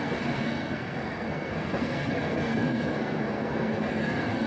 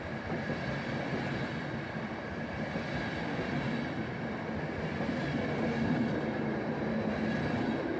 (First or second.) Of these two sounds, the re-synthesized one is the first